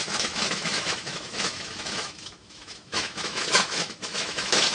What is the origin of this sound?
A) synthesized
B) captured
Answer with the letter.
A